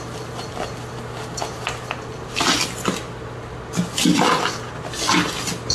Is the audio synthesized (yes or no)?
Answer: no